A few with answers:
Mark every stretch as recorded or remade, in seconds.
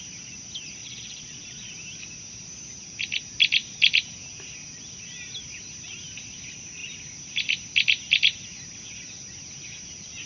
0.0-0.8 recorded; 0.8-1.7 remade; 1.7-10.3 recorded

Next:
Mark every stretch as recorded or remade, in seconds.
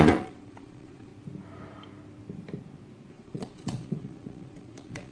0.0-1.1 remade; 1.1-3.1 recorded; 3.1-5.1 remade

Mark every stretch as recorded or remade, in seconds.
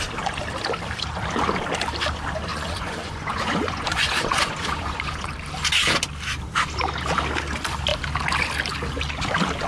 0.0-2.5 recorded; 2.5-5.3 remade; 5.3-9.7 recorded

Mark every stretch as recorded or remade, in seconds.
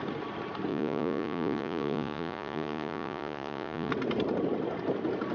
0.0-0.7 recorded; 0.7-3.9 remade; 3.9-5.3 recorded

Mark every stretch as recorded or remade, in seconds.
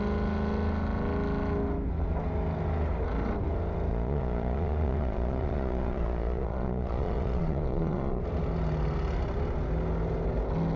0.0-3.9 recorded; 3.9-8.2 remade; 8.2-10.8 recorded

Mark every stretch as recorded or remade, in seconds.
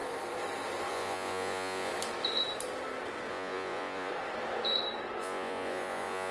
0.0-0.9 recorded; 0.9-1.9 remade; 1.9-3.3 recorded; 3.3-4.1 remade; 4.1-5.2 recorded; 5.2-6.3 remade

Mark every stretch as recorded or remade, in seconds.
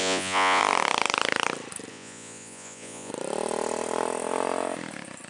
0.0-0.6 remade; 0.6-1.9 recorded; 1.9-3.1 remade; 3.1-5.3 recorded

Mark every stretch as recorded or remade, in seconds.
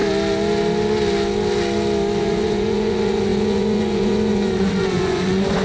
0.0-2.2 recorded; 2.2-5.6 remade